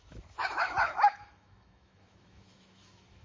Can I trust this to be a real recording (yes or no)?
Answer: no